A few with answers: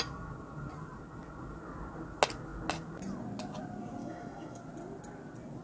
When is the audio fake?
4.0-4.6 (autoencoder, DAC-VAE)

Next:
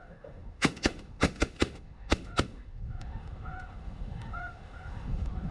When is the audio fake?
0.0-5.5 (autoencoder, DAC-VAE)

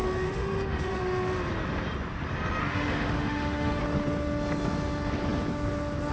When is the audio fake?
0.0-1.0 (autoencoder, DAC-VAE); 2.6-3.8

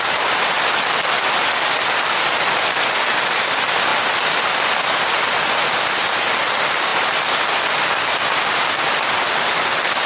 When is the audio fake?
none

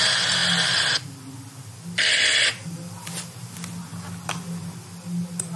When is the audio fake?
none

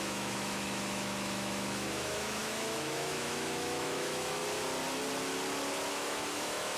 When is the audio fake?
0.0-4.4 (autoencoder, DAC-VAE); 5.9-6.8

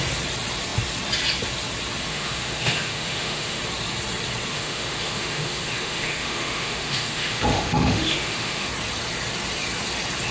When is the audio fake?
2.1-3.6 (autoencoder, DAC-VAE); 4.5-8.7

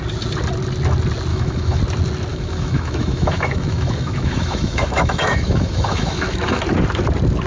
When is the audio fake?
1.3-1.8 (autoencoder, DAC-VAE); 2.3-6.6